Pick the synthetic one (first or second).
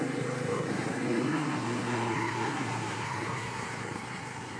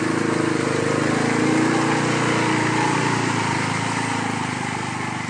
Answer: first